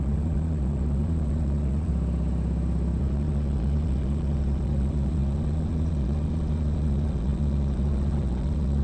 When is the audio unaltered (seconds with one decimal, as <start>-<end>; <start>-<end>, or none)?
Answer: 1.9-3.0